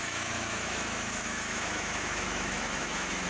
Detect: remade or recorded remade